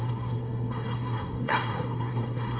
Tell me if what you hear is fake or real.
fake